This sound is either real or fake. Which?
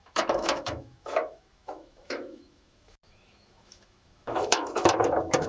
fake